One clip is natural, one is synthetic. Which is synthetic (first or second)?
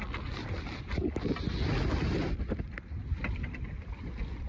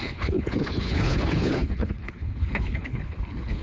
second